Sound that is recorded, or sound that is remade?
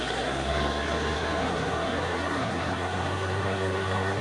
remade